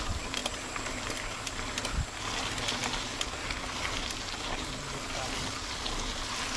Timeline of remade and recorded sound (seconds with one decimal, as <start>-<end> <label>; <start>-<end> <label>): 0.0-6.6 recorded